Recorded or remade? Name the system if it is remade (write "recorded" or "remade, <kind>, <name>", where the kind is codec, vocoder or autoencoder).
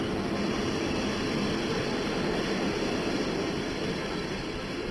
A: recorded